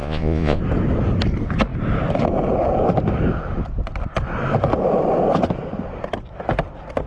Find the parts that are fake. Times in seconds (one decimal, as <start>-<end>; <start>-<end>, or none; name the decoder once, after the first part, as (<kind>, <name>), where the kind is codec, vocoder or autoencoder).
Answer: 0.0-0.6 (vocoder, Vocos)